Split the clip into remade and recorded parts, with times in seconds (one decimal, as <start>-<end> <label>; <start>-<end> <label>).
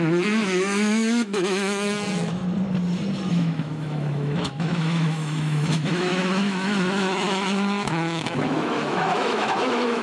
0.0-2.4 remade; 2.4-3.3 recorded; 3.3-10.0 remade